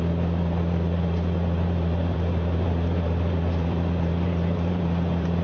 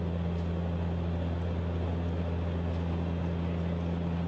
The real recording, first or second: second